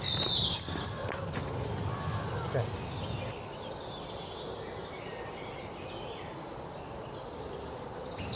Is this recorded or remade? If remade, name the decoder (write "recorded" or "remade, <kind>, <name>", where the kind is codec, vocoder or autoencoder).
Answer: recorded